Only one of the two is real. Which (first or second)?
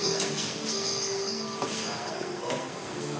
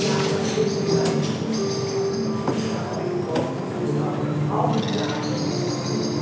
second